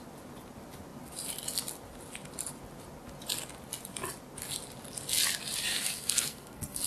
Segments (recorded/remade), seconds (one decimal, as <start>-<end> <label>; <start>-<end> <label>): 0.0-5.7 recorded; 5.7-6.9 remade

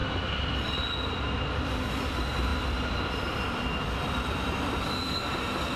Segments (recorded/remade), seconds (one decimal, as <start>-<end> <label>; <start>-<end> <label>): 0.0-2.1 remade; 2.1-2.5 recorded; 2.5-5.2 remade; 5.2-5.8 recorded

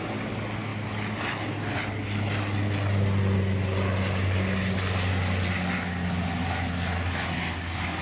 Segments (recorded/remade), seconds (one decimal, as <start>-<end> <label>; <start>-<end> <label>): 0.0-8.0 recorded

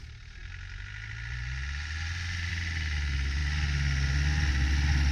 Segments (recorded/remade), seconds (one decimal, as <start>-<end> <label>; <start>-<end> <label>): 0.0-5.1 recorded